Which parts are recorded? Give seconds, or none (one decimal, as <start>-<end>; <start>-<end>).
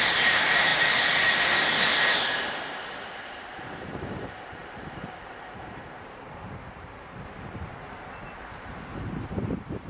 0.7-3.1; 7.7-8.4